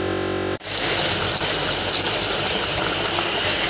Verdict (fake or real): real